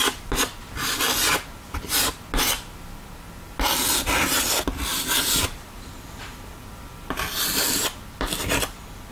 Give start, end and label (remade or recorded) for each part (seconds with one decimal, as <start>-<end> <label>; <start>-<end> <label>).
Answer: 0.0-4.9 recorded; 4.9-7.4 remade; 7.4-9.1 recorded